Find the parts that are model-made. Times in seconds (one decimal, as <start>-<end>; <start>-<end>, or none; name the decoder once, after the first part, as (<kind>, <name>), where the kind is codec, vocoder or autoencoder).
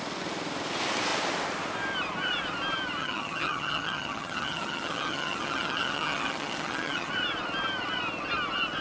3.0-7.1 (vocoder, HiFi-GAN)